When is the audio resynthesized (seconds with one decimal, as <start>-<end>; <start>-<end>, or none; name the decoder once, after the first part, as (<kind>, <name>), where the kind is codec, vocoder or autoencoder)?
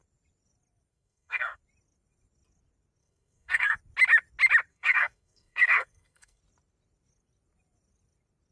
0.9-1.6 (codec, SNAC); 3.0-3.8; 4.7-6.4